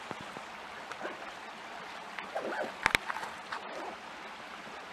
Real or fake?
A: real